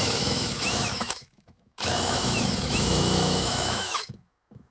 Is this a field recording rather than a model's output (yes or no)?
no